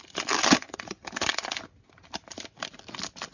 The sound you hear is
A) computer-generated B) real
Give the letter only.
B